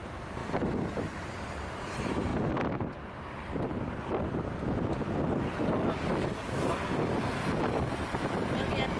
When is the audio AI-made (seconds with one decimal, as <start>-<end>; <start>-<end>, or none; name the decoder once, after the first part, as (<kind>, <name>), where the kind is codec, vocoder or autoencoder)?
0.0-0.4 (vocoder, BigVGAN v2); 1.0-9.0